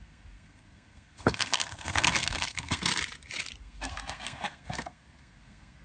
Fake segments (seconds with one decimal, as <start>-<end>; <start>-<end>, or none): 0.0-2.9; 3.6-5.8